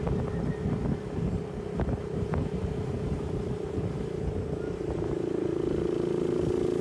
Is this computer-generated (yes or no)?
no